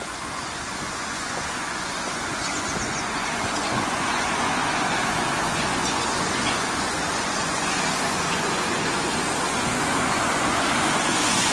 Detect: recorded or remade remade